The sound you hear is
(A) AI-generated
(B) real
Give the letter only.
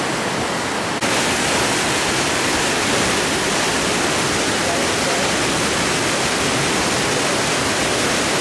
B